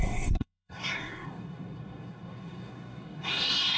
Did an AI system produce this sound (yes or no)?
yes